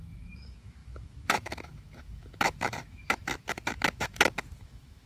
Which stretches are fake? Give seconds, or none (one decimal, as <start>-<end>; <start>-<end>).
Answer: 0.0-5.1